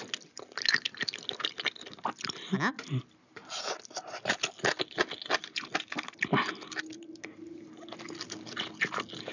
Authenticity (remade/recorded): recorded